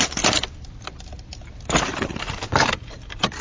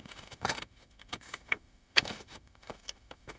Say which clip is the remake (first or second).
second